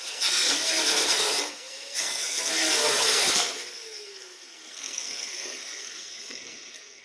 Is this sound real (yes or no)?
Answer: no